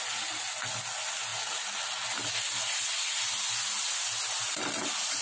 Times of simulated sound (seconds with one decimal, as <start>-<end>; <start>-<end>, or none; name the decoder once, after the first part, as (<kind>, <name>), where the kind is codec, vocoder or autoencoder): none